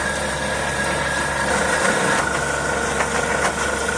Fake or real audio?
real